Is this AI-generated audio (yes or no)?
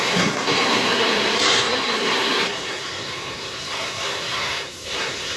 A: yes